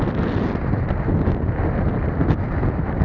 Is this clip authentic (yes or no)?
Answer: yes